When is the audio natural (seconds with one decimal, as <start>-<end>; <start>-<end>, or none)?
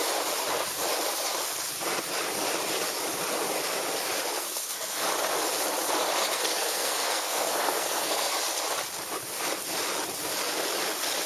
0.0-4.3; 5.1-6.3; 8.4-11.3